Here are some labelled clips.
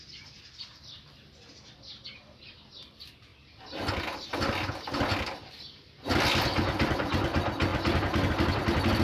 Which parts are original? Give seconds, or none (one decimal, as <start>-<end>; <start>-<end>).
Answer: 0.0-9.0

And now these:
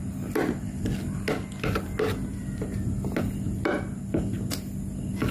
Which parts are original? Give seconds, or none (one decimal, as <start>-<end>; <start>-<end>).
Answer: 0.0-5.3

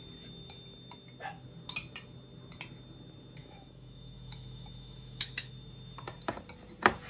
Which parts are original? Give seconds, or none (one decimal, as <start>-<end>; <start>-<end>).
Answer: 0.0-3.4; 5.5-7.1